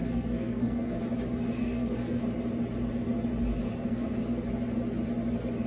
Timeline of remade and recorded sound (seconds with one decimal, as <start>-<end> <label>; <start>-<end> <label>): 0.0-1.0 remade; 1.0-1.6 recorded; 1.6-2.2 remade; 2.2-3.7 recorded; 3.7-4.2 remade; 4.2-5.7 recorded